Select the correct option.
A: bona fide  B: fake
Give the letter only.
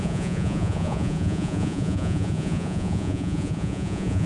B